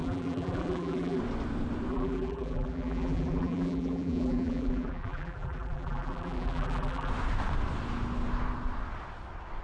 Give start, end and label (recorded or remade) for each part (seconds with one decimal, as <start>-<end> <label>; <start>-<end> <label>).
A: 0.0-1.2 remade; 1.2-1.9 recorded; 1.9-7.1 remade; 7.1-9.6 recorded